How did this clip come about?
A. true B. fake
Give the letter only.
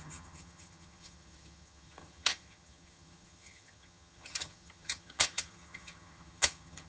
B